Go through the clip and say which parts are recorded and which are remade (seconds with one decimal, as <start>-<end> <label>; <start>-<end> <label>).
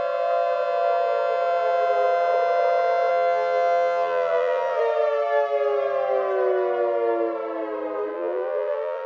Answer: 0.0-3.1 recorded; 3.1-4.8 remade; 4.8-8.1 recorded; 8.1-9.1 remade